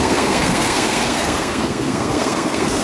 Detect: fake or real fake